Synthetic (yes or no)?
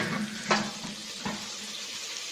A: no